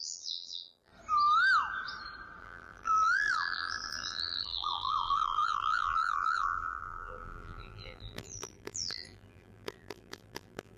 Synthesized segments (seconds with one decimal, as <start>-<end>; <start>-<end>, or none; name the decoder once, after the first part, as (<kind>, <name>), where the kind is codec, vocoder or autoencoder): 0.0-0.9 (vocoder, BigVGAN v2); 2.4-10.8